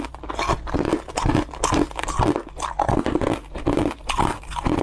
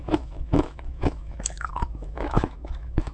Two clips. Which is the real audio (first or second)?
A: first